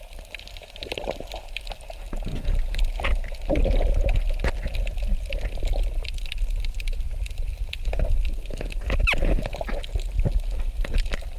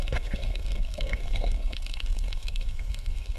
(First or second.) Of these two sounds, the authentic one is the first